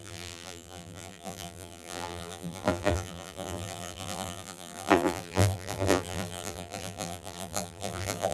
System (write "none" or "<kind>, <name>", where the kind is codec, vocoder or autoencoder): vocoder, BigVGAN v2